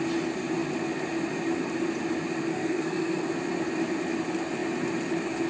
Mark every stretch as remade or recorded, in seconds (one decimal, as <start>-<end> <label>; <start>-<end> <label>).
0.0-2.5 recorded; 2.5-3.3 remade; 3.3-5.5 recorded

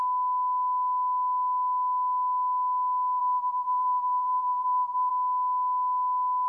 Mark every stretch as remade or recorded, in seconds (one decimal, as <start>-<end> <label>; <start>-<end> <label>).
0.0-3.2 recorded; 3.2-5.1 remade; 5.1-6.5 recorded

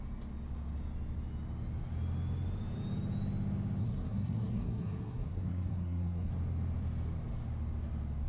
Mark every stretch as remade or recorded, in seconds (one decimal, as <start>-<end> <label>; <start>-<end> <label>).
0.0-3.8 recorded; 3.8-6.3 remade; 6.3-8.3 recorded

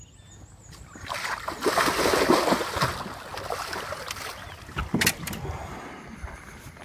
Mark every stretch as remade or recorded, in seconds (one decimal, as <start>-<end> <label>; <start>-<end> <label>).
0.0-3.3 recorded; 3.3-4.3 remade; 4.3-4.8 recorded; 4.8-5.6 remade; 5.6-6.8 recorded